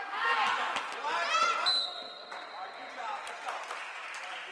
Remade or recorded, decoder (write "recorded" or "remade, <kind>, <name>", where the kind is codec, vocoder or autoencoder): recorded